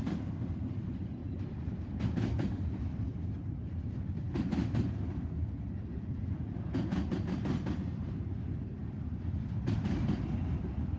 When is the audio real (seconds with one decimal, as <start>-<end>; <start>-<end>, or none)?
0.0-5.9; 7.0-11.0